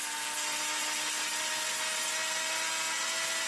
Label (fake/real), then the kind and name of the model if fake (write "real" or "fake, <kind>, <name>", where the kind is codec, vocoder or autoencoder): real